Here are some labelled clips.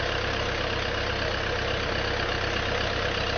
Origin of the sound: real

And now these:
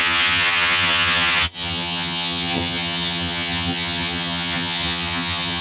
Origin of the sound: fake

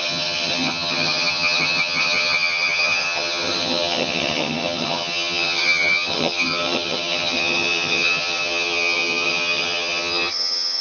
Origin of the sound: fake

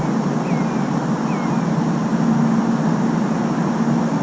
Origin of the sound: real